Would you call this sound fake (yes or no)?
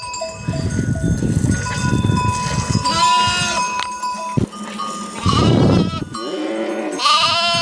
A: no